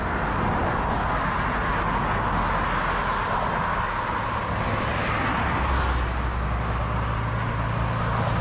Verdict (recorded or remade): recorded